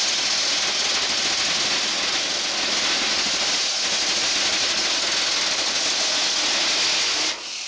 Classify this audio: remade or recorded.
recorded